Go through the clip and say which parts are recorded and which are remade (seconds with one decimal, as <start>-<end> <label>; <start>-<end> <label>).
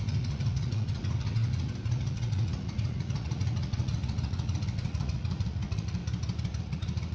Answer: 0.0-6.0 remade; 6.0-6.6 recorded; 6.6-7.1 remade